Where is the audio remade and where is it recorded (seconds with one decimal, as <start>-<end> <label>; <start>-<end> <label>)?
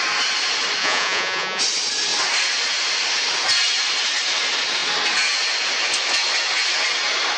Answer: 0.0-0.8 recorded; 0.8-1.6 remade; 1.6-7.4 recorded